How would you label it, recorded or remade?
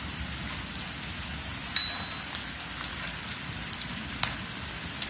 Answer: recorded